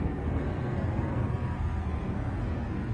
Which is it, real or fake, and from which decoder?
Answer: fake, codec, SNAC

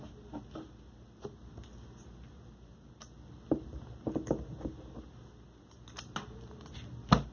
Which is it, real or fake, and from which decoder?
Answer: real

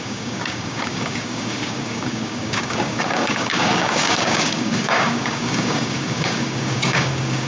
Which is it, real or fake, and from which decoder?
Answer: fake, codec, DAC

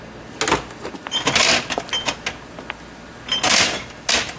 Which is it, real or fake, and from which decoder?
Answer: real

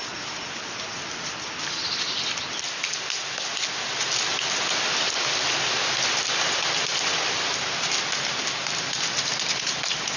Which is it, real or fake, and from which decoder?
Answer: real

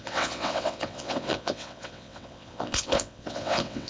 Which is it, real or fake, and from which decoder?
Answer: fake, vocoder, WaveNeXt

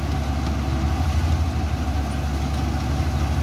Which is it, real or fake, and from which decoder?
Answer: real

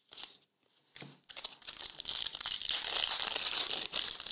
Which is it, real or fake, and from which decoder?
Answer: real